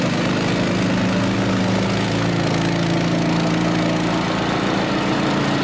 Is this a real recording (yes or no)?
yes